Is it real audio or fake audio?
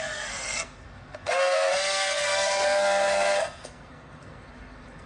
fake